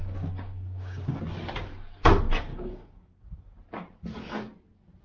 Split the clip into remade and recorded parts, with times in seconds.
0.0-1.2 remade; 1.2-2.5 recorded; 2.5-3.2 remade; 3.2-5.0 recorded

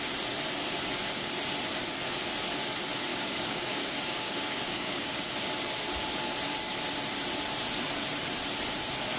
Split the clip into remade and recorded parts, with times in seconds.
0.0-3.1 recorded; 3.1-5.2 remade; 5.2-9.2 recorded

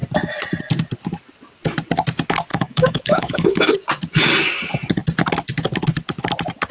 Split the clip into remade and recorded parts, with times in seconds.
0.0-2.5 recorded; 2.5-3.7 remade; 3.7-6.7 recorded

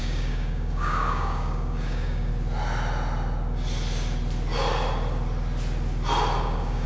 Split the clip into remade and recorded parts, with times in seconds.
0.0-2.3 remade; 2.3-6.4 recorded; 6.4-6.9 remade

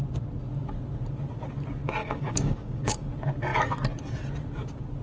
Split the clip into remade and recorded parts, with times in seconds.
0.0-2.0 recorded; 2.0-3.1 remade; 3.1-5.0 recorded